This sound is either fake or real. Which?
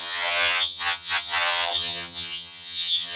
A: fake